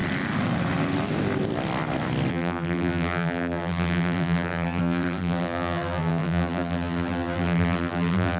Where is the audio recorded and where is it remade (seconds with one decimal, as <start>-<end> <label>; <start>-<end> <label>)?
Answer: 0.0-2.3 recorded; 2.3-8.4 remade